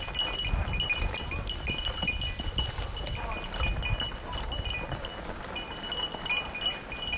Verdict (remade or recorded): recorded